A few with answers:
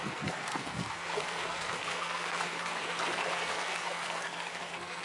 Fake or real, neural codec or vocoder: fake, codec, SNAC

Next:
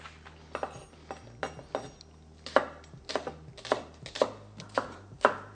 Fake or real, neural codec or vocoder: real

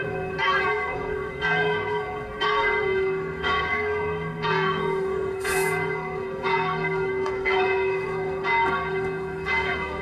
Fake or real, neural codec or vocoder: fake, codec, SNAC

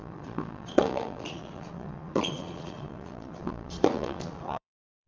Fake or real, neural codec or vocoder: fake, vocoder, Vocos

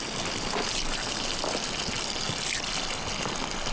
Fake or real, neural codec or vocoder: real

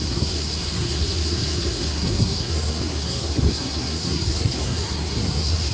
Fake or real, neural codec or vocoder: fake, codec, SNAC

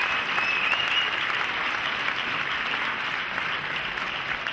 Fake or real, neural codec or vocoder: real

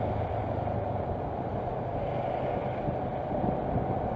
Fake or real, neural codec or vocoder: real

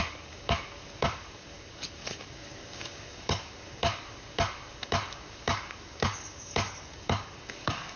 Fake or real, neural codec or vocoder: fake, codec, DAC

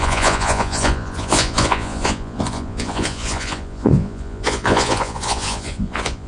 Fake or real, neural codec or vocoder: fake, vocoder, Vocos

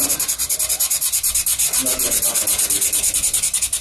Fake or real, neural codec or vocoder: real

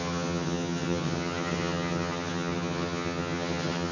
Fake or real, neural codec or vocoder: fake, vocoder, HiFi-GAN